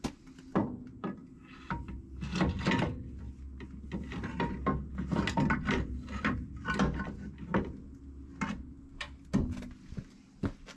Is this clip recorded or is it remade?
recorded